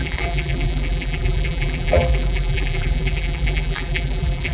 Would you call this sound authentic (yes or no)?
no